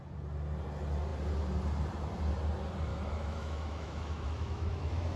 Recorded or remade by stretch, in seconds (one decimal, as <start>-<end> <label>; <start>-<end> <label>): 0.0-2.9 recorded; 2.9-5.2 remade